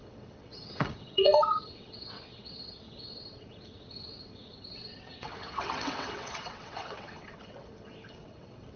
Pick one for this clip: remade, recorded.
remade